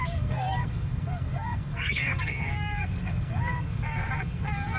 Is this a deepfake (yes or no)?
yes